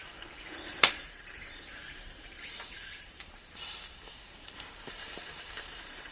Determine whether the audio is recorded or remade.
remade